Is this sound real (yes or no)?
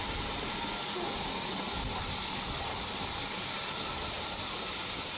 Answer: yes